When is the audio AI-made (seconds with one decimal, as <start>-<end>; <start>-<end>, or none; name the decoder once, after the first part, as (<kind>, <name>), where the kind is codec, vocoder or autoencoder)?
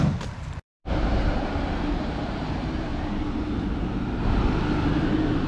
0.0-2.9 (vocoder, BigVGAN v2)